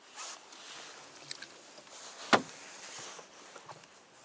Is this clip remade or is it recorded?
recorded